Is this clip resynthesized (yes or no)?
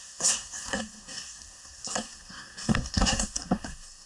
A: yes